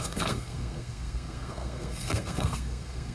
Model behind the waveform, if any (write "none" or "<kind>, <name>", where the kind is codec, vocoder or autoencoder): codec, SNAC